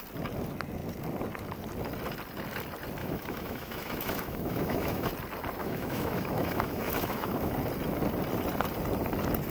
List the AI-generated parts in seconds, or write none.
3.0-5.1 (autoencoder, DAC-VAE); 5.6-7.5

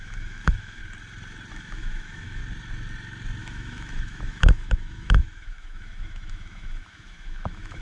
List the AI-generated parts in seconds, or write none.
0.0-0.8 (autoencoder, DAC-VAE); 1.5-2.4; 3.4-7.8

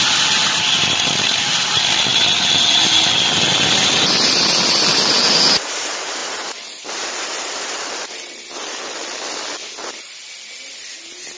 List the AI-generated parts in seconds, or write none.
none

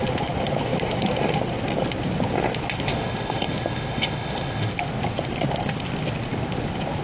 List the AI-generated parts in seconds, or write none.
2.9-4.7 (autoencoder, DAC-VAE)

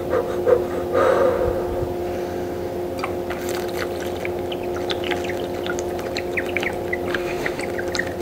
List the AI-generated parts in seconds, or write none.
7.1-7.6 (autoencoder, DAC-VAE)